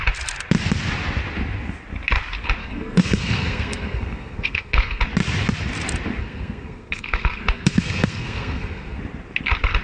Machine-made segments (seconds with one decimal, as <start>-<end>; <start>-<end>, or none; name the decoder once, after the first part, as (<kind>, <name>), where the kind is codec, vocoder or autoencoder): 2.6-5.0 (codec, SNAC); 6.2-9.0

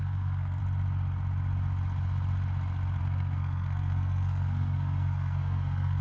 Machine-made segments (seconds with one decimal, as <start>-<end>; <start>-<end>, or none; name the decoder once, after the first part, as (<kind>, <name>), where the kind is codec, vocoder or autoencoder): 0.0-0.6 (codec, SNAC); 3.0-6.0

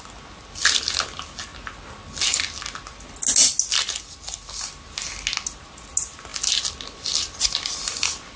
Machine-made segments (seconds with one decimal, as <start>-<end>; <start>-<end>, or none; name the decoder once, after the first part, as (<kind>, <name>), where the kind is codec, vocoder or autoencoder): none

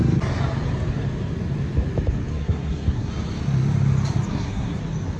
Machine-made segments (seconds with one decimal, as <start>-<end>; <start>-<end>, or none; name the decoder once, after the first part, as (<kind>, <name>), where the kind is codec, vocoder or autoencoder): 2.3-3.1 (codec, SNAC); 4.3-4.8

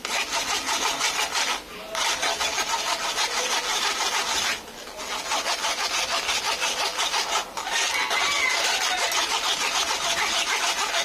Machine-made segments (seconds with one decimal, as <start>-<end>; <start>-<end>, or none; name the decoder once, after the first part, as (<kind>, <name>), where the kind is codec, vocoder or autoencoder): none

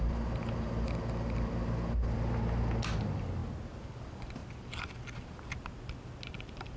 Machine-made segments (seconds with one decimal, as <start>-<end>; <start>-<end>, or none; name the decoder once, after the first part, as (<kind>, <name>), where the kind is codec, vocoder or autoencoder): none

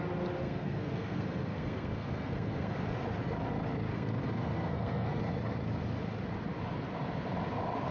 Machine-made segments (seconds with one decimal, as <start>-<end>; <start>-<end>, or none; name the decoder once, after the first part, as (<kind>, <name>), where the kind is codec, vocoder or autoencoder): 0.4-2.7 (codec, SNAC); 3.9-5.2